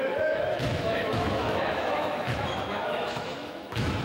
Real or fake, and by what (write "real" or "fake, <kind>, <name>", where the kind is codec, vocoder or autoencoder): fake, autoencoder, DAC-VAE